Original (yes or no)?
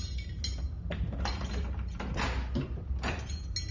yes